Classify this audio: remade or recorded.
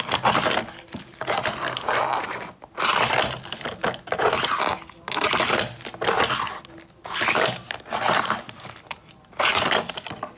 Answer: recorded